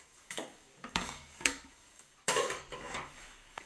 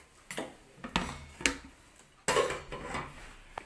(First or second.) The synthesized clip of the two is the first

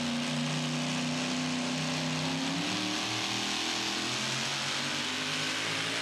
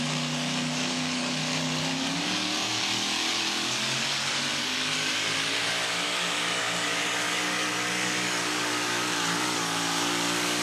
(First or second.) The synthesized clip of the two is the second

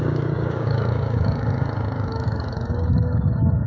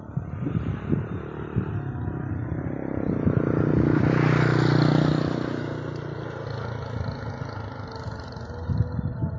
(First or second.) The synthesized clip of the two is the first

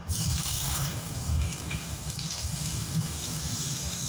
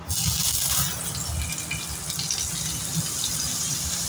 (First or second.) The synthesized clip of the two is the first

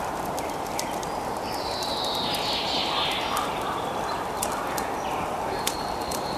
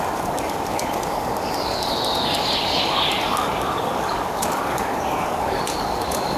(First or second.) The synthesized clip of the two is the second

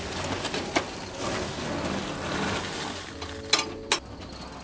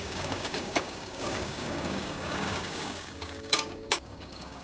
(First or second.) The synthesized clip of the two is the second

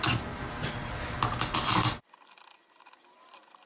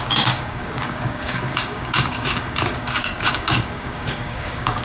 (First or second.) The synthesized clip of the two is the second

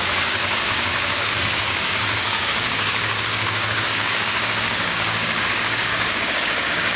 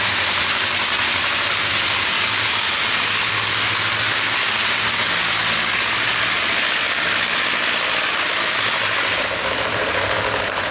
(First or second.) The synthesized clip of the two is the first